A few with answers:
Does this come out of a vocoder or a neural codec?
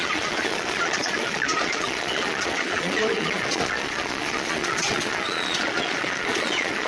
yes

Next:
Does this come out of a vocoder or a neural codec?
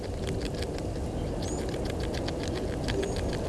no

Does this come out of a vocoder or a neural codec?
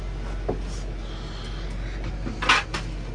no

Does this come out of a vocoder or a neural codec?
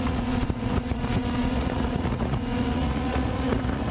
yes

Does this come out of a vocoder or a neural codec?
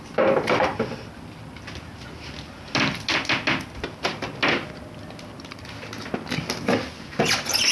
no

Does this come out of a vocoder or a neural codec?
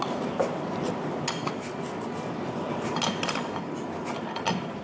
no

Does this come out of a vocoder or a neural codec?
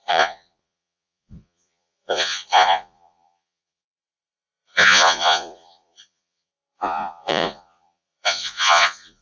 yes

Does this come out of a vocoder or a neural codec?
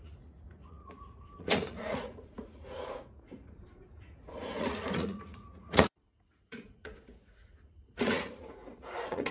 yes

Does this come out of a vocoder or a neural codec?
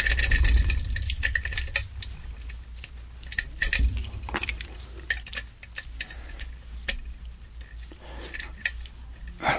no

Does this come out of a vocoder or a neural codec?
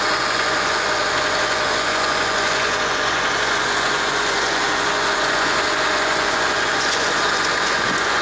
yes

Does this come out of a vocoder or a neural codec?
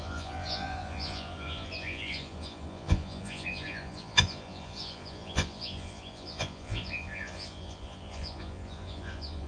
yes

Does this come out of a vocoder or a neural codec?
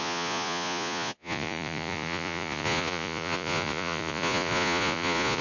yes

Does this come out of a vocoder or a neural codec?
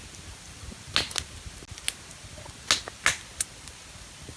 no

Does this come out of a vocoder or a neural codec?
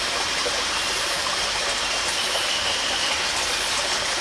no